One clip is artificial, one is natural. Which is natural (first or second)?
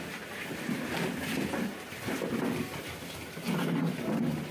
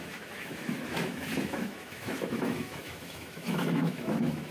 first